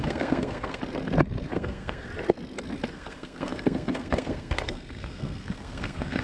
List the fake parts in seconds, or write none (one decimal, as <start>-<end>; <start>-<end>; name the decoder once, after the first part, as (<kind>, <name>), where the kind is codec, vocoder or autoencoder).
0.0-0.8 (codec, SNAC); 1.5-2.1; 2.9-6.2